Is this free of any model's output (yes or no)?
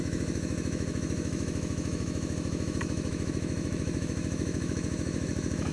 no